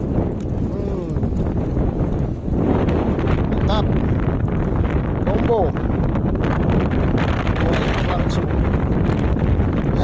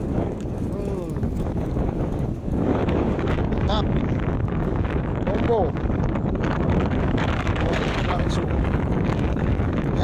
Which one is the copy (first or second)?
second